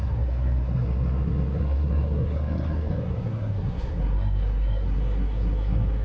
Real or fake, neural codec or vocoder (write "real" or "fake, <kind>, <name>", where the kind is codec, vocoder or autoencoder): fake, codec, SNAC